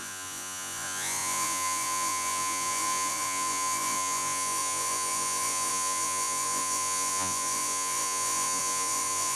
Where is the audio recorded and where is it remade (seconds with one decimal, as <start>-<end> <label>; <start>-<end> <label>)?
0.0-9.4 remade